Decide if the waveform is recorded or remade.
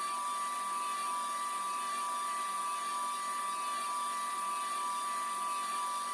recorded